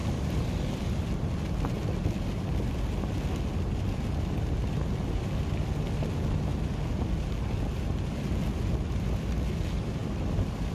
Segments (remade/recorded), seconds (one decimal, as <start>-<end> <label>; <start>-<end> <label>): 0.0-10.7 recorded